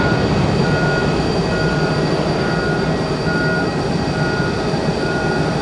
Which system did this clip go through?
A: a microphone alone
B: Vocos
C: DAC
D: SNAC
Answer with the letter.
A